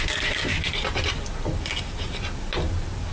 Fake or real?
real